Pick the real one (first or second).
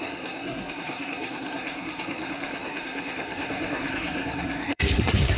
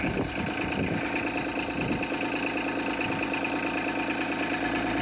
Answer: second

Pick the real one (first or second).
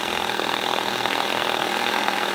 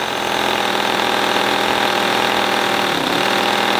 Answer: second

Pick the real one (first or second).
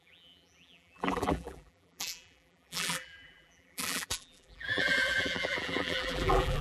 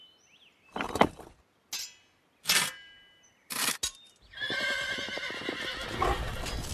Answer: second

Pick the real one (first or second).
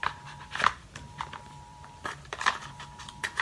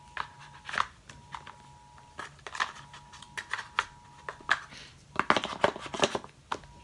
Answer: second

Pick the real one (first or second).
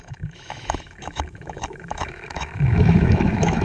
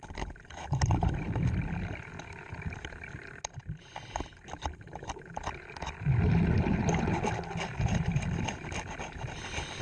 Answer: second